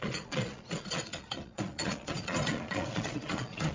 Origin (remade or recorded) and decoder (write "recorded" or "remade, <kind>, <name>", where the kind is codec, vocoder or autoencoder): remade, vocoder, Vocos